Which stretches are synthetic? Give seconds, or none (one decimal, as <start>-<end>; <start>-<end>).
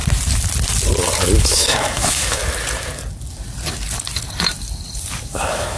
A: 1.4-2.4; 5.2-5.8